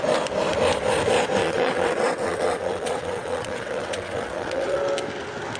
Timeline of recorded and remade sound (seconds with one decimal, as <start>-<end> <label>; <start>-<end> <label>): 0.0-1.4 recorded; 1.4-4.8 remade; 4.8-5.6 recorded